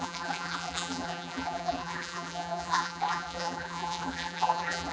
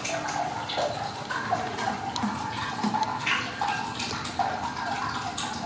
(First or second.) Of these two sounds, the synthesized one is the first